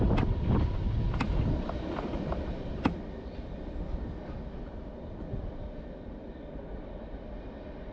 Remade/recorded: recorded